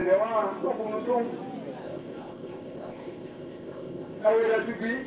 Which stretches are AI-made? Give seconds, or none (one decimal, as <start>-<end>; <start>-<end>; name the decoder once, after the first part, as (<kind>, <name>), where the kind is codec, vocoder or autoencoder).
1.8-4.2 (codec, ZipCodec)